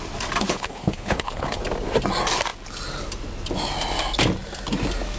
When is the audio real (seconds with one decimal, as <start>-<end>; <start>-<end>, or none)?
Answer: 0.0-0.5; 1.6-5.2